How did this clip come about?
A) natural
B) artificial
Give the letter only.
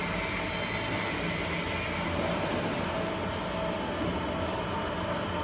A